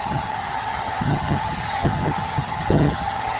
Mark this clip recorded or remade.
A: remade